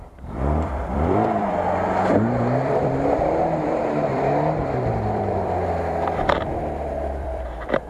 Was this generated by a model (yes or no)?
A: yes